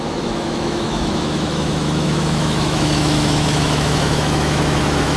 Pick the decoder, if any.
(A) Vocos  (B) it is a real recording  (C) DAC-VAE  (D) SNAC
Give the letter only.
C